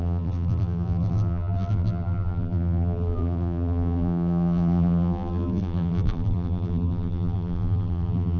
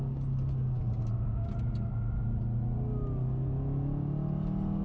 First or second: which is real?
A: second